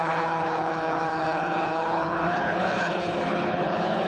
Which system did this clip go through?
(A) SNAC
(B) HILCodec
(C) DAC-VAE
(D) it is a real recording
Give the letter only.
B